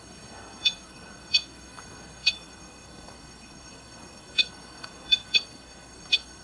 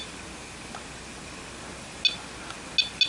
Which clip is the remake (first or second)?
first